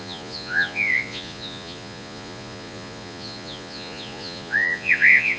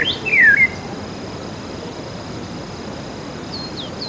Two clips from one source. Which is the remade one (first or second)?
first